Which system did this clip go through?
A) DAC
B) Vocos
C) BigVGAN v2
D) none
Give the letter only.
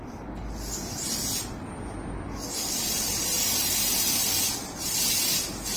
D